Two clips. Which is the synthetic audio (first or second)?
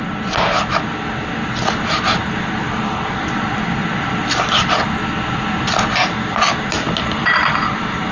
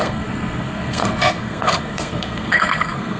second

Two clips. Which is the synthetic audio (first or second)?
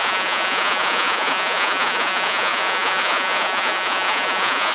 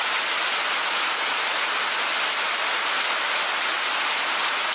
first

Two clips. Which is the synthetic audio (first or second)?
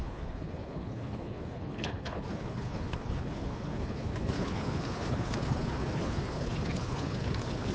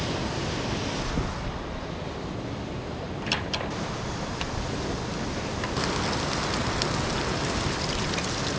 first